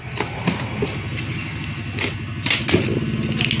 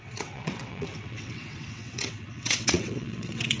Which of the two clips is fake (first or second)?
second